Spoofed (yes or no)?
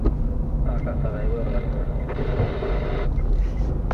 no